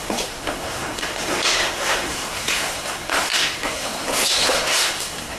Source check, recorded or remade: remade